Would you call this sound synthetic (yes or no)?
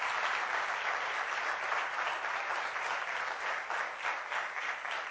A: no